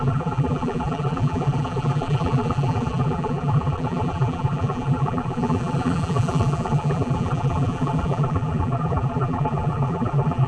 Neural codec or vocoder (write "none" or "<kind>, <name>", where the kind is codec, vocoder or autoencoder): vocoder, BigVGAN v2